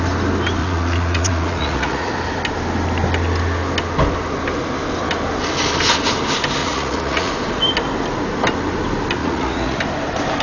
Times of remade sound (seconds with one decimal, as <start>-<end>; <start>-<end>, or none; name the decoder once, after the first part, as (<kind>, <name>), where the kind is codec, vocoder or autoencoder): 0.6-2.1 (vocoder, Vocos); 6.6-7.3; 9.2-9.8